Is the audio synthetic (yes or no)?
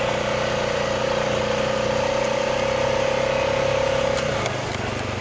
no